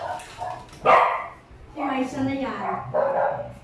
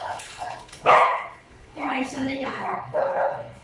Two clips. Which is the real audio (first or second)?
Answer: first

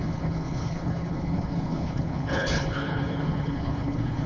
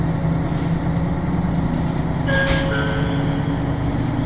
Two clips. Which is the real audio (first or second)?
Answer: second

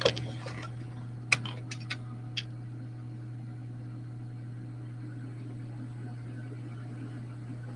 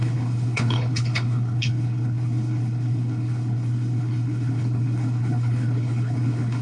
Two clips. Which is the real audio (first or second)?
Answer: first